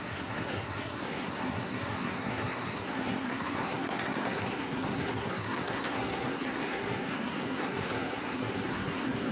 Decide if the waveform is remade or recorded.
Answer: remade